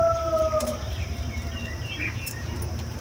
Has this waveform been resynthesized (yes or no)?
yes